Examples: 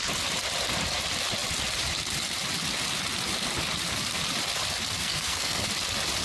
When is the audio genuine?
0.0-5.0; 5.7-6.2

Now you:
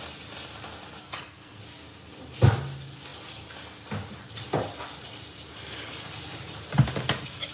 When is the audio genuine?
0.0-1.0; 1.6-7.5

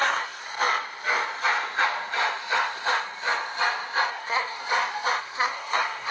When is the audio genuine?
0.4-4.1; 4.6-5.2